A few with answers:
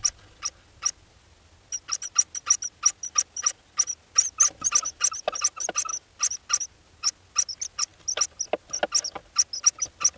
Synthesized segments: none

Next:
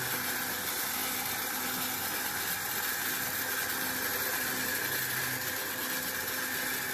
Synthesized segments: none

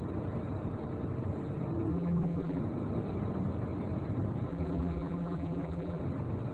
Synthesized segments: 1.9-2.6 (vocoder, BigVGAN v2); 4.5-6.0